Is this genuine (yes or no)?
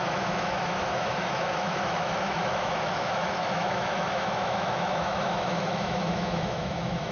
no